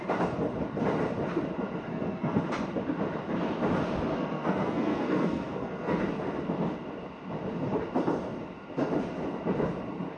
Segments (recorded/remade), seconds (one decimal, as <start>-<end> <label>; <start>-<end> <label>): 0.0-1.9 recorded; 1.9-2.4 remade; 2.4-4.1 recorded; 4.1-6.0 remade; 6.0-10.2 recorded